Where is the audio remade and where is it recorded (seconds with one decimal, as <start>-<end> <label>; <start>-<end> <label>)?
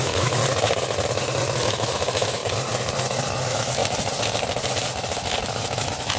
0.0-0.4 remade; 0.4-1.6 recorded; 1.6-2.4 remade; 2.4-3.4 recorded; 3.4-3.8 remade; 3.8-5.4 recorded; 5.4-6.2 remade